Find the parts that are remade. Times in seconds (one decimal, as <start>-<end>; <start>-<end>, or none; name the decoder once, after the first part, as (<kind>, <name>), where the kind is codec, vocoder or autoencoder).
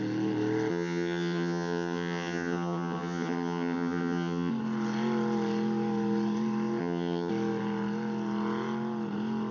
0.7-4.5 (vocoder, HiFi-GAN); 6.8-7.3